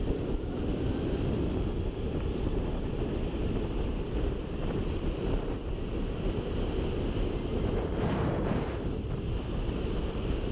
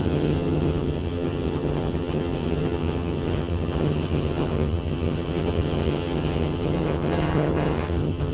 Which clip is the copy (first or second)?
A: second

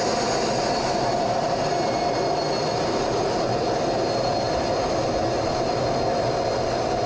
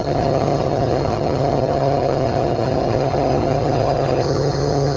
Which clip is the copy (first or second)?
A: second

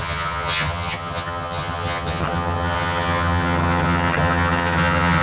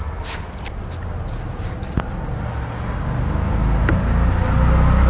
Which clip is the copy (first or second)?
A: first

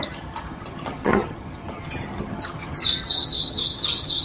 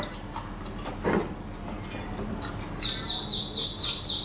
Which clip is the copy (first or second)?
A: first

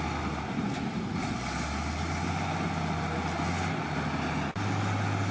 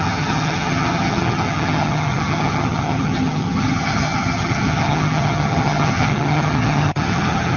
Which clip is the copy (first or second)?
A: second